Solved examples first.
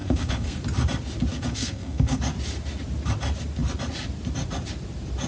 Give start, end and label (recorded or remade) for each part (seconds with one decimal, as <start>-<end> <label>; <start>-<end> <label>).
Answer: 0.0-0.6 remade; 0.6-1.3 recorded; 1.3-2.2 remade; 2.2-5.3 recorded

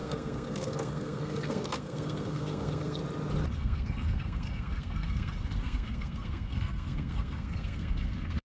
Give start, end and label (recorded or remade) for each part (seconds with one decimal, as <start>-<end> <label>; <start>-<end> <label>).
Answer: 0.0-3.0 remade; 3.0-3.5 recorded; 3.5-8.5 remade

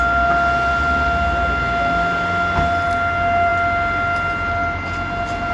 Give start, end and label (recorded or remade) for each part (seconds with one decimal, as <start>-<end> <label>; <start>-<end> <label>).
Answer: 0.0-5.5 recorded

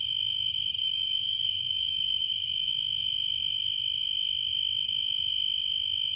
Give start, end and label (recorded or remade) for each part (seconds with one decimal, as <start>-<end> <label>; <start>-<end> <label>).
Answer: 0.0-0.8 recorded; 0.8-2.7 remade; 2.7-6.2 recorded

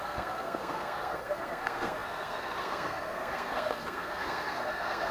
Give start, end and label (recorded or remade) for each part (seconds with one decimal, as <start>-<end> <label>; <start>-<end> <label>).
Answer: 0.0-5.1 remade

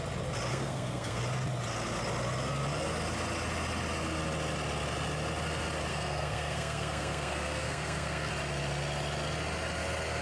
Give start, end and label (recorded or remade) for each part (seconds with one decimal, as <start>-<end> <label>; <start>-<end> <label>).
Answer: 0.0-0.5 recorded; 0.5-1.2 remade; 1.2-5.9 recorded; 5.9-8.3 remade; 8.3-10.2 recorded